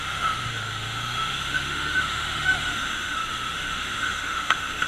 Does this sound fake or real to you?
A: fake